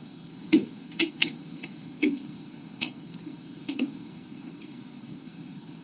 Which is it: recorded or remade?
remade